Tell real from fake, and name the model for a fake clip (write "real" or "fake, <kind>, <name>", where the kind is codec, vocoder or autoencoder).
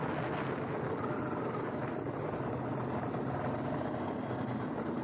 real